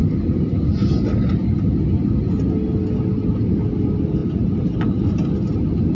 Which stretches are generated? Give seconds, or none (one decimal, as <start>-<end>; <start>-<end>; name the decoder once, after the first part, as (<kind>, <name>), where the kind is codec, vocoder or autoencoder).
none